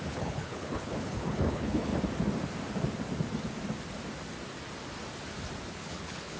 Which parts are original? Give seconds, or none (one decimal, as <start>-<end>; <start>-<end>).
1.9-5.7

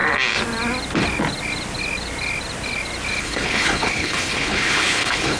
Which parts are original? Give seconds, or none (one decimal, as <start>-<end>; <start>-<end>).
0.0-3.2

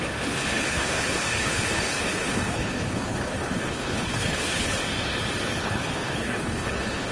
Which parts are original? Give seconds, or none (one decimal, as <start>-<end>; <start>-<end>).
4.8-5.6

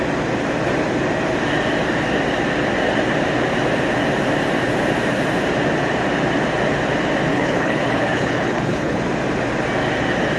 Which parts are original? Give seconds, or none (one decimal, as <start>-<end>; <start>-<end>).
0.0-7.3; 9.0-10.4

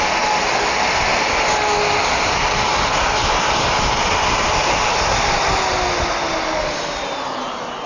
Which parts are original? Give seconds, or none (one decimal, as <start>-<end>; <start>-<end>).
0.0-7.9